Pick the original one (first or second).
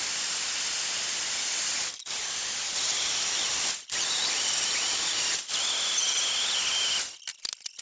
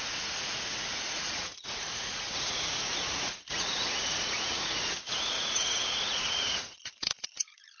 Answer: first